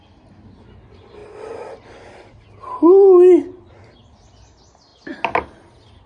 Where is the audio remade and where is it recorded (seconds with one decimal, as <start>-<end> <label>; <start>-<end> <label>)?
0.0-6.1 recorded